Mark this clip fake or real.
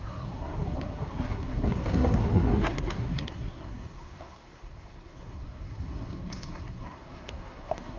fake